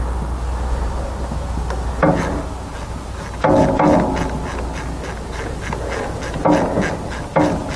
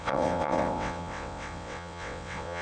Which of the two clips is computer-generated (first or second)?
second